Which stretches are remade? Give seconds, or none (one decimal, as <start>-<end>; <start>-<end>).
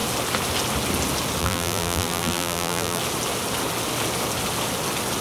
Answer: 1.4-3.0